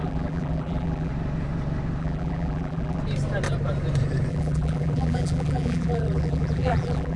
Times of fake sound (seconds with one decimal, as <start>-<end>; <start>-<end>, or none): 0.0-1.1; 2.0-3.0; 4.3-7.2